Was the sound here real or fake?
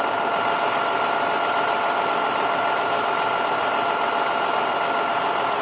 real